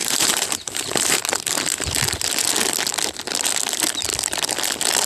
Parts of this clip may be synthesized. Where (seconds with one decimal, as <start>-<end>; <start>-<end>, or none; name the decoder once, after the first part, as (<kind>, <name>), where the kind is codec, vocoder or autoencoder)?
0.0-1.2 (vocoder, BigVGAN v2)